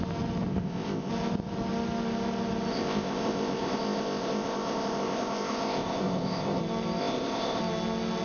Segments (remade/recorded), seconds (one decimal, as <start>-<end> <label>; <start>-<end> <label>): 0.0-0.5 recorded; 0.5-1.1 remade; 1.1-2.7 recorded; 2.7-6.6 remade; 6.6-7.0 recorded; 7.0-7.6 remade; 7.6-8.2 recorded